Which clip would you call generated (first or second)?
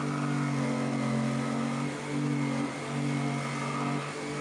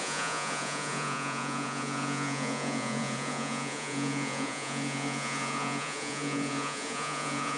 second